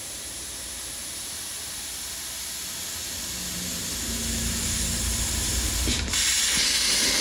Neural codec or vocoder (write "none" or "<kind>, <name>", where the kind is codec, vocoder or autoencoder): none